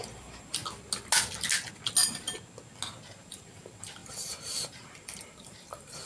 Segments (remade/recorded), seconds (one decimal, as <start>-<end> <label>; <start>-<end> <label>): 0.0-0.6 remade; 0.6-3.2 recorded; 3.2-6.1 remade